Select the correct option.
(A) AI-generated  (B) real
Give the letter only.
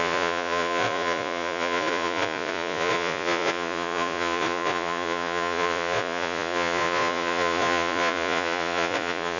A